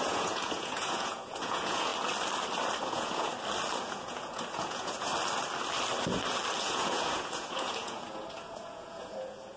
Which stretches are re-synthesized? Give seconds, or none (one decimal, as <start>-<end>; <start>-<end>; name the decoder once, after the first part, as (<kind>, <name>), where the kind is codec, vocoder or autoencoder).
0.0-1.9 (vocoder, Vocos); 2.8-3.3; 3.8-5.1; 6.6-9.6